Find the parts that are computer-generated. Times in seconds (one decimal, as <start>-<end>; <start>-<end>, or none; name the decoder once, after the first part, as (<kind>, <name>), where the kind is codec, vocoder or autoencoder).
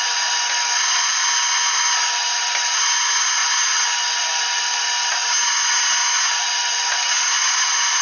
none